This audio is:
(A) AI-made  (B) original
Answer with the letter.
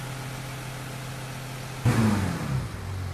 B